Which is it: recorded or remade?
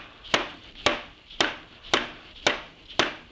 recorded